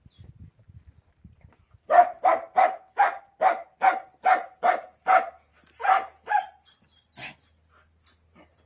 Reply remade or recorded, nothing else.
recorded